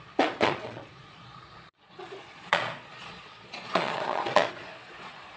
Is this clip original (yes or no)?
no